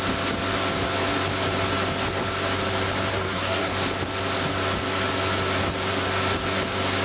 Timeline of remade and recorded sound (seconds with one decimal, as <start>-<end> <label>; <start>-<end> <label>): 0.0-3.1 recorded; 3.1-3.7 remade; 3.7-7.0 recorded